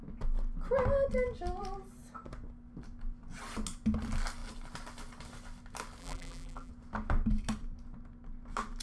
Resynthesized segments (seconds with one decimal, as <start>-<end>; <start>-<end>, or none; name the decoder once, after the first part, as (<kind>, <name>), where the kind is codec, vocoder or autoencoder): 6.0-6.7 (vocoder, BigVGAN v2)